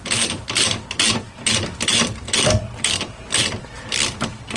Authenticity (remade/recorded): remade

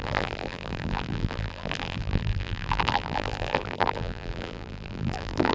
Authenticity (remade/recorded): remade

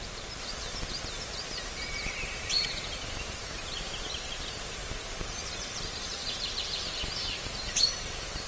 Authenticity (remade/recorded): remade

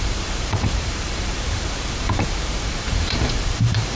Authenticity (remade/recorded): remade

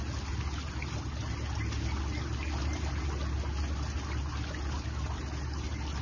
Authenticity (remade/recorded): recorded